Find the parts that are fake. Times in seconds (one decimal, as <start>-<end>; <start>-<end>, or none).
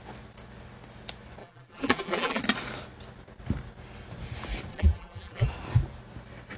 1.4-2.4; 4.7-5.5